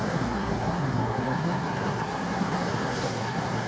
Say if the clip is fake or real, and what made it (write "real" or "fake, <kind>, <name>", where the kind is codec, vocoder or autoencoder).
fake, codec, SNAC